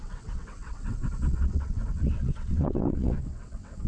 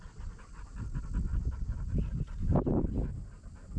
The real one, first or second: second